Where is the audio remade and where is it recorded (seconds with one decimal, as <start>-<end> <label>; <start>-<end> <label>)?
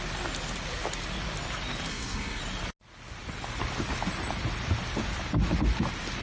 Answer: 0.0-1.9 recorded; 1.9-2.4 remade; 2.4-6.2 recorded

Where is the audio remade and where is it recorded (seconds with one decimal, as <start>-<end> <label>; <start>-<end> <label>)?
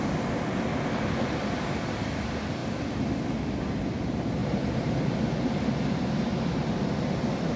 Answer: 0.0-7.6 recorded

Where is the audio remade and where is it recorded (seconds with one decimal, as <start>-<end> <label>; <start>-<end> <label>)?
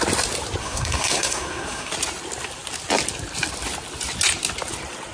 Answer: 0.0-0.6 recorded; 0.6-1.9 remade; 1.9-5.1 recorded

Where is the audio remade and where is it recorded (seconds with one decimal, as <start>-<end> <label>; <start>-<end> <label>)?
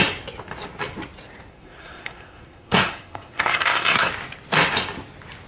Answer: 0.0-1.5 recorded; 1.5-4.1 remade; 4.1-5.5 recorded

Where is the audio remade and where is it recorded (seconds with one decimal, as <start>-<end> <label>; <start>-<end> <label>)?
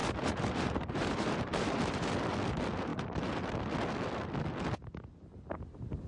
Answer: 0.0-2.1 remade; 2.1-6.1 recorded